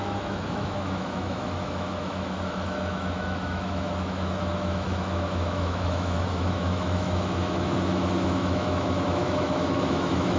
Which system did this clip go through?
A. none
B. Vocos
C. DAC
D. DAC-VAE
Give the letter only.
D